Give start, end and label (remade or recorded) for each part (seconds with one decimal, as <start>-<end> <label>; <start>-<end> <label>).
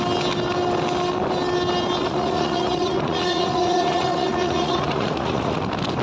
0.0-2.0 recorded; 2.0-5.6 remade; 5.6-6.0 recorded